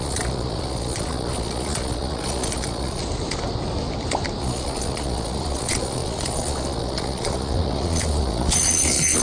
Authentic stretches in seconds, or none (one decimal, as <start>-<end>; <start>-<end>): 3.0-4.4